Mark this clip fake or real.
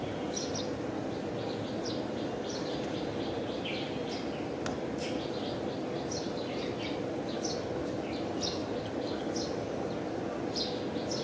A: real